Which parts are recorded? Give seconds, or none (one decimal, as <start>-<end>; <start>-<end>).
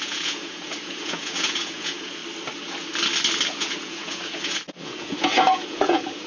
2.2-3.5